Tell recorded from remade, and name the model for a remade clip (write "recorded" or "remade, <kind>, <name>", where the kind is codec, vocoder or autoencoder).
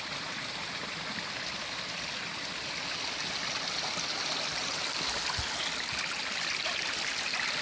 recorded